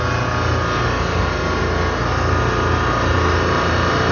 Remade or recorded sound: recorded